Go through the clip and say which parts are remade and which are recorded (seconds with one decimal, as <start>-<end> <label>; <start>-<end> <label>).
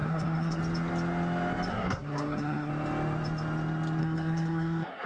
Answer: 0.0-0.6 remade; 0.6-1.7 recorded; 1.7-2.7 remade; 2.7-4.0 recorded; 4.0-5.1 remade